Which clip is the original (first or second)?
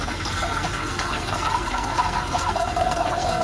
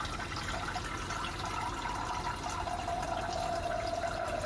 second